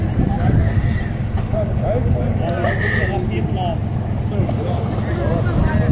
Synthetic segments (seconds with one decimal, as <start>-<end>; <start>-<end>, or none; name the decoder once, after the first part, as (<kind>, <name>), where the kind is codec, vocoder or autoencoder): none